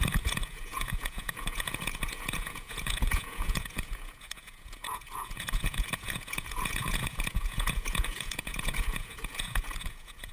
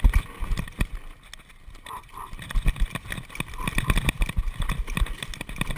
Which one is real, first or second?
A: second